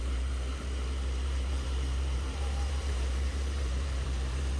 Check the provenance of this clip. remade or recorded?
remade